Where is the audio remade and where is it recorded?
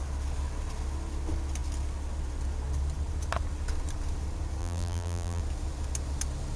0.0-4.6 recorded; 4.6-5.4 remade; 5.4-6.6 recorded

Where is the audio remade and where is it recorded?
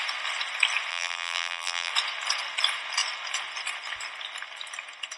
0.0-0.9 recorded; 0.9-1.9 remade; 1.9-5.2 recorded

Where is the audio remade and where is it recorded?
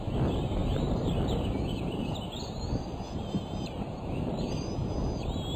0.0-0.6 recorded; 0.6-4.0 remade; 4.0-5.6 recorded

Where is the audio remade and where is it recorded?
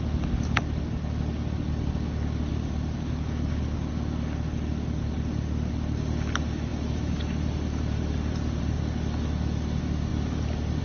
0.0-2.5 recorded; 2.5-3.5 remade; 3.5-6.7 recorded; 6.7-8.8 remade; 8.8-10.1 recorded; 10.1-10.8 remade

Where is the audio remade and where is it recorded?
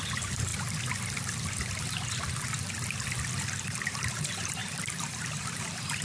0.0-0.5 remade; 0.5-3.4 recorded; 3.4-6.0 remade